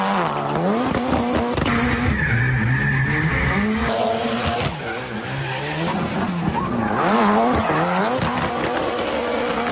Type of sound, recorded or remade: recorded